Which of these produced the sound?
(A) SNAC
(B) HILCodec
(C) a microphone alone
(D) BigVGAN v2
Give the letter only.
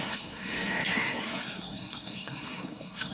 A